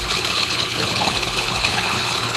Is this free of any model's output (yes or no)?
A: no